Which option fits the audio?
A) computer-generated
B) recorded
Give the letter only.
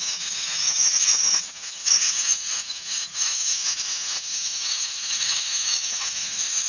A